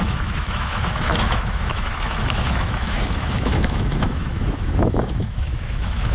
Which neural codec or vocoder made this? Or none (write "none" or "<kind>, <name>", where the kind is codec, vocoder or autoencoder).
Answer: autoencoder, DAC-VAE